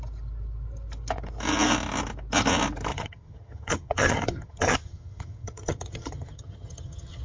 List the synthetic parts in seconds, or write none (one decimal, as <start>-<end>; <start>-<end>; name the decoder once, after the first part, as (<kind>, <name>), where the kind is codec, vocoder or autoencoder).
2.9-7.2 (vocoder, HiFi-GAN)